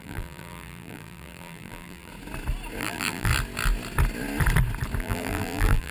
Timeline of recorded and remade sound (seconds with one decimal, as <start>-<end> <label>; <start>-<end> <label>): 0.0-2.1 remade; 2.1-2.8 recorded; 2.8-3.3 remade; 3.3-5.0 recorded; 5.0-5.9 remade